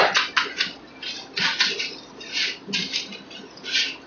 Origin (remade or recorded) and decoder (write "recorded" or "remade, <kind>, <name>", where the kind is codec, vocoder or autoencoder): recorded